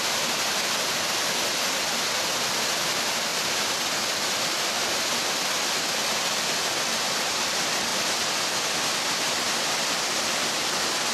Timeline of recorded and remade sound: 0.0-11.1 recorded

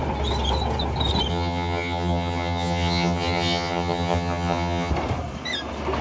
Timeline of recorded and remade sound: 0.0-1.3 recorded; 1.3-4.9 remade; 4.9-6.0 recorded

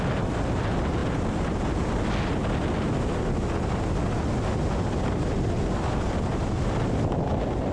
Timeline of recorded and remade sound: 0.0-7.7 recorded

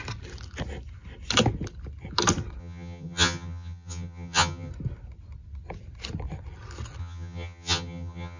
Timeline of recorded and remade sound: 0.0-2.6 recorded; 2.6-4.7 remade; 4.7-7.0 recorded; 7.0-8.4 remade

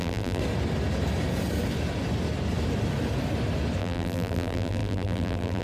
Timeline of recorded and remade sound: 0.0-0.4 remade; 0.4-3.8 recorded; 3.8-5.6 remade

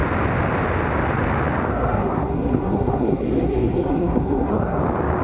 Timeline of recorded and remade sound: 0.0-1.7 recorded; 1.7-4.8 remade; 4.8-5.2 recorded